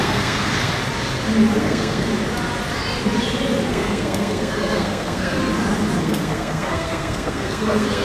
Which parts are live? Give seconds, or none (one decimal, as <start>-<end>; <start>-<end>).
0.7-1.6; 2.1-3.7; 5.4-6.0